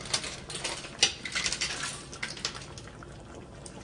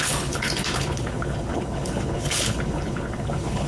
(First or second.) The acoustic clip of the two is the first